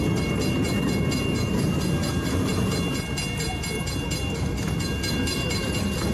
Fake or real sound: real